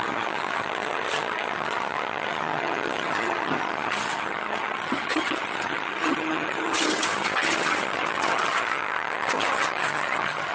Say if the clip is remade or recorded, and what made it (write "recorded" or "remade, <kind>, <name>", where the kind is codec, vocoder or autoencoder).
remade, vocoder, HiFi-GAN